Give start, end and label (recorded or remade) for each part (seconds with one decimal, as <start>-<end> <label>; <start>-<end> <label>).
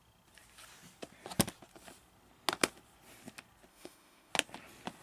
0.0-3.7 recorded; 3.7-4.3 remade; 4.3-5.0 recorded